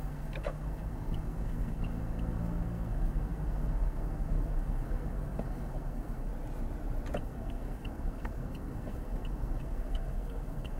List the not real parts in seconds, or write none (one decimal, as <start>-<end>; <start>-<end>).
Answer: 0.0-6.3; 7.2-10.8